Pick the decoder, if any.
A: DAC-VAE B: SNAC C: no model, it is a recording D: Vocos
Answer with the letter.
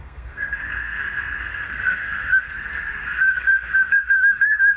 B